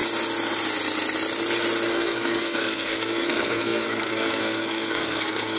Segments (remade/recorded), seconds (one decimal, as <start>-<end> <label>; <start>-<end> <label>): 0.0-1.9 recorded; 1.9-5.6 remade